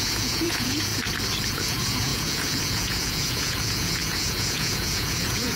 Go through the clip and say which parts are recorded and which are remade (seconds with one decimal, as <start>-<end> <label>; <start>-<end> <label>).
0.0-0.9 remade; 0.9-1.5 recorded; 1.5-5.6 remade

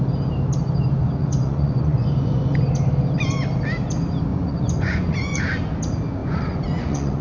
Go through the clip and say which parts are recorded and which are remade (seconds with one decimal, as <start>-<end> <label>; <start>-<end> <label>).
0.0-1.2 recorded; 1.2-2.6 remade; 2.6-4.3 recorded; 4.3-5.4 remade; 5.4-6.2 recorded; 6.2-7.2 remade